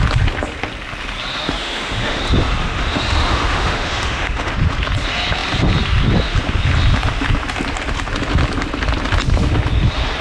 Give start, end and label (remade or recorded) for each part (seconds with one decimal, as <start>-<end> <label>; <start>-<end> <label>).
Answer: 0.0-1.6 recorded; 1.6-2.2 remade; 2.2-2.6 recorded; 2.6-4.5 remade; 4.5-10.2 recorded